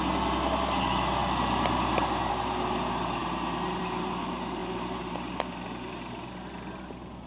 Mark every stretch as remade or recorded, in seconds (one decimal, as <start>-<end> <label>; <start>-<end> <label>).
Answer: 0.0-7.3 recorded